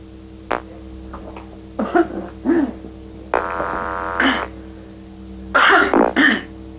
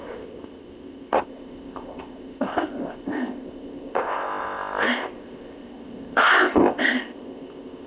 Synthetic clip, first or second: second